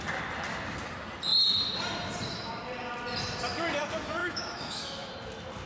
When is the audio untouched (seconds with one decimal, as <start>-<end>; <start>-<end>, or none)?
0.0-4.2; 5.1-5.7